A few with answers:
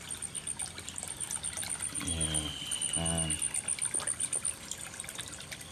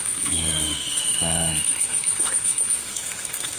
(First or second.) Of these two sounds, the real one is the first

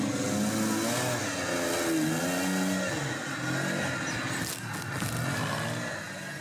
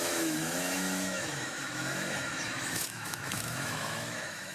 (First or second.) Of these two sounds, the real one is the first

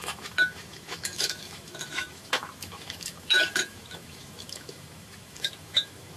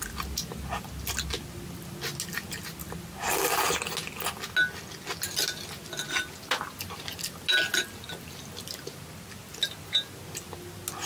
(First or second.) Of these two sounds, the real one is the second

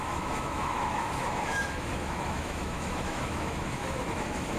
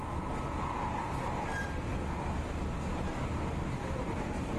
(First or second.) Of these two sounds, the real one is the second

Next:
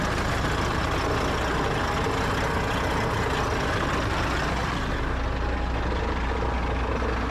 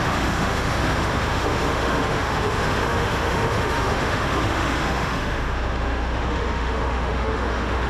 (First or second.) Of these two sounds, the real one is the first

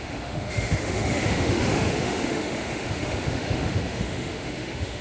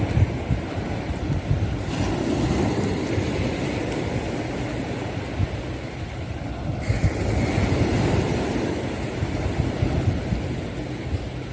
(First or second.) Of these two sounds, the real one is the second